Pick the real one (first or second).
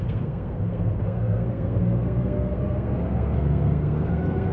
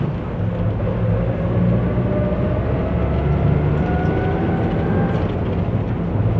second